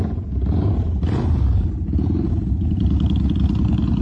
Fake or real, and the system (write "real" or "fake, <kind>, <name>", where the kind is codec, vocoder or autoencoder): real